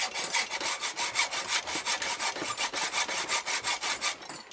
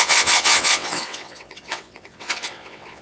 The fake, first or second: second